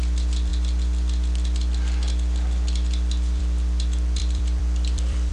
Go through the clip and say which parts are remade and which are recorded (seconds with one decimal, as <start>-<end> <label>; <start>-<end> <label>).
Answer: 0.0-4.2 recorded; 4.2-5.3 remade